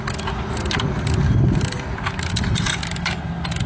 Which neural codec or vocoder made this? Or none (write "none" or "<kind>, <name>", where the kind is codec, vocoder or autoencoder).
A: none